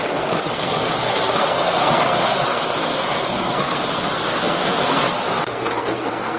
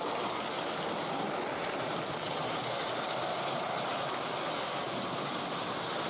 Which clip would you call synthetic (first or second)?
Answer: first